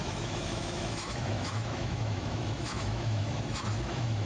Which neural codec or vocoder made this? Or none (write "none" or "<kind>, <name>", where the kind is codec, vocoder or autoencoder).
autoencoder, DAC-VAE